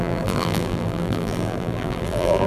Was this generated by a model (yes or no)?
yes